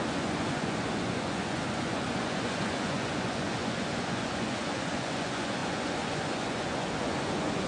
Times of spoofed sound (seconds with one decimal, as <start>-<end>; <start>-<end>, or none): 0.0-7.7